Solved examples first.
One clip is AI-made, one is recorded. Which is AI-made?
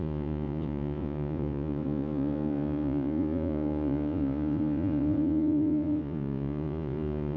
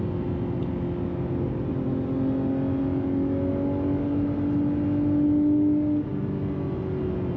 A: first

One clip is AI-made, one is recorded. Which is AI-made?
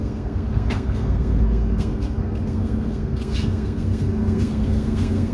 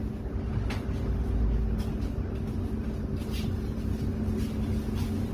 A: first